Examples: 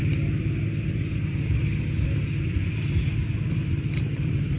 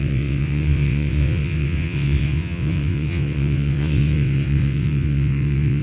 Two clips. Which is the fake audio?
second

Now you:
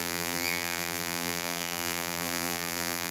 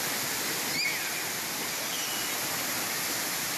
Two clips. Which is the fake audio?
first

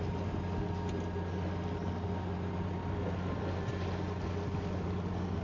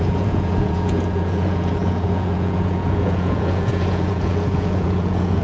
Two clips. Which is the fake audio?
second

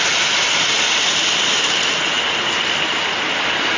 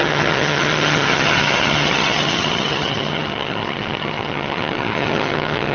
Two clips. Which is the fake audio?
second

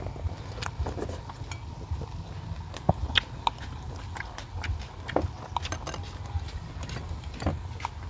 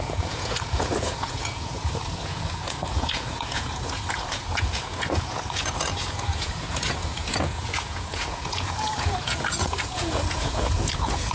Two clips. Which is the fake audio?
second